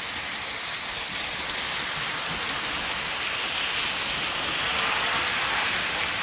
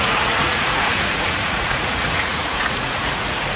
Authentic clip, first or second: first